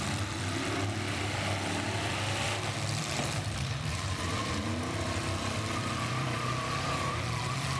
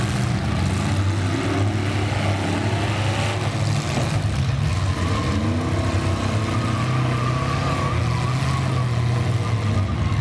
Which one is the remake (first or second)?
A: first